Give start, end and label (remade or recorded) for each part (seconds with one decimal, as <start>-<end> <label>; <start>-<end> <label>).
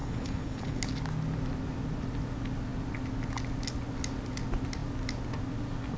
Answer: 0.0-0.8 remade; 0.8-6.0 recorded